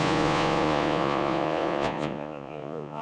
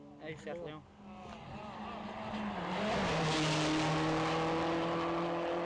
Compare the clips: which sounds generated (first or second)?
first